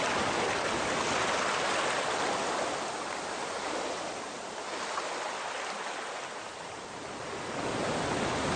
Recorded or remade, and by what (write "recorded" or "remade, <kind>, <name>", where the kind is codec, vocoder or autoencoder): recorded